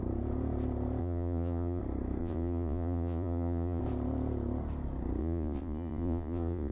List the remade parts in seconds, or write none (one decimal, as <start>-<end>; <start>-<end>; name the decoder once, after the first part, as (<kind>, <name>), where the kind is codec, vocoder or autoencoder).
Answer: 1.0-1.8 (vocoder, Vocos); 2.2-3.8; 5.2-6.7